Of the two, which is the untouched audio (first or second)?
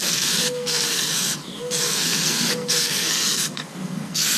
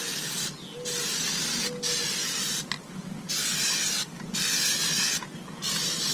second